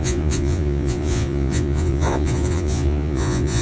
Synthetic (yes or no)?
yes